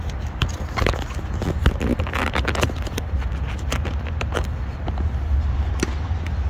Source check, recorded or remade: recorded